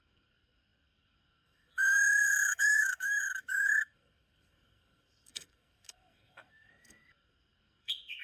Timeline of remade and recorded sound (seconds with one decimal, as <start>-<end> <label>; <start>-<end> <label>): 0.0-8.2 remade